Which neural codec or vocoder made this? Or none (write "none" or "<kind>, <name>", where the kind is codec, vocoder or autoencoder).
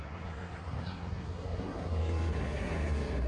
codec, SNAC